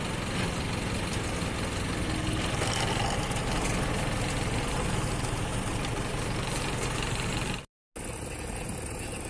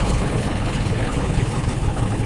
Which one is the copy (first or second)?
second